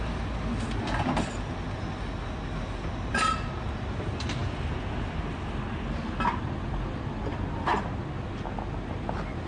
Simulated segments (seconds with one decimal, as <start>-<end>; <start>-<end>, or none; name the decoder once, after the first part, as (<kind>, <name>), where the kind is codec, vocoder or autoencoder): none